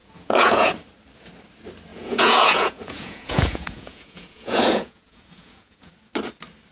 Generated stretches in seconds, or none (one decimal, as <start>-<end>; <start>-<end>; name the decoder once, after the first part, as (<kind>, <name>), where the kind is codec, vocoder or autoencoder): 0.0-0.7 (vocoder, Vocos); 1.9-5.9